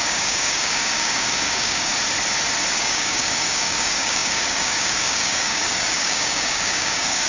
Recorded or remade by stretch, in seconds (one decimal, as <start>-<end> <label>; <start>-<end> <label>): 0.0-1.9 remade; 1.9-2.7 recorded; 2.7-7.3 remade